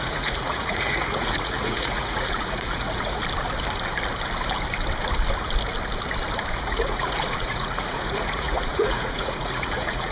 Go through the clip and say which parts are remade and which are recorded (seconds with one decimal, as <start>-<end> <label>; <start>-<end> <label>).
0.0-3.2 remade; 3.2-6.6 recorded; 6.6-10.1 remade